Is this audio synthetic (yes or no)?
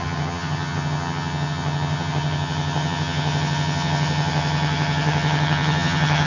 yes